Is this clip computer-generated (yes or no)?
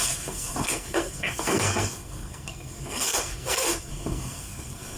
yes